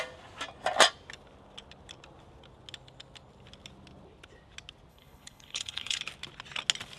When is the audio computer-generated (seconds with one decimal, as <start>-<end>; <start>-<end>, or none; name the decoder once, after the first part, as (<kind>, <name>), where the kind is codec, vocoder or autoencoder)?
4.9-6.0 (codec, HILCodec)